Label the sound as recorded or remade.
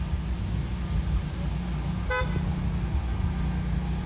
recorded